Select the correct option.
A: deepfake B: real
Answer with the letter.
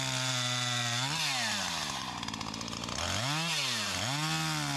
B